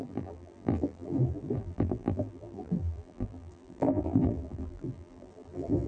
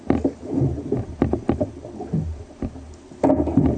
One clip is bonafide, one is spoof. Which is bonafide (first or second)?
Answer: second